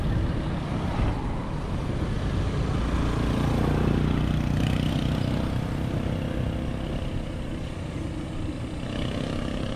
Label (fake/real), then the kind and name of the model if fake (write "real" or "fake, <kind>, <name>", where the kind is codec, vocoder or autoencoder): real